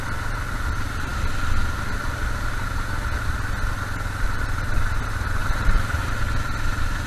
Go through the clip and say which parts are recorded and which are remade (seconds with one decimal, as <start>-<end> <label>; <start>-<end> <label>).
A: 0.0-5.4 recorded; 5.4-6.1 remade; 6.1-7.1 recorded